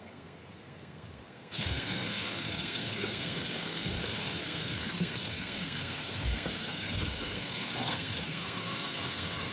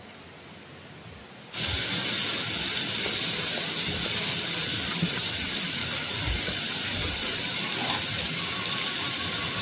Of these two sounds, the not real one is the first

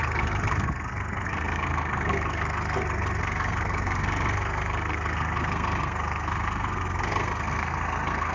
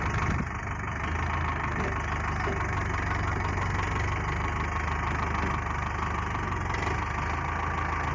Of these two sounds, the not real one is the first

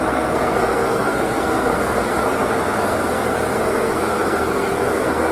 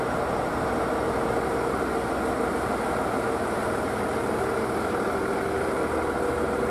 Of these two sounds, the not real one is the first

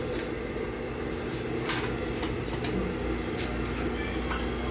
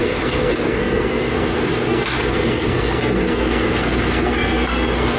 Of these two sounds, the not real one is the second